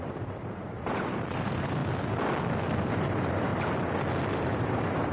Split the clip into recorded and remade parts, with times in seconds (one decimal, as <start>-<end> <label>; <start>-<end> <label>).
0.0-1.8 remade; 1.8-2.9 recorded; 2.9-3.5 remade; 3.5-4.3 recorded; 4.3-5.1 remade